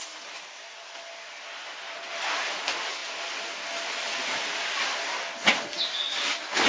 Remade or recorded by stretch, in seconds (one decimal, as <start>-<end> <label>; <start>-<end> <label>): 0.0-6.7 recorded